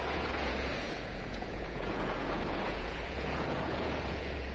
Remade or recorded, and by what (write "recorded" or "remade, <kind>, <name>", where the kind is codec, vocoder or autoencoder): remade, vocoder, Vocos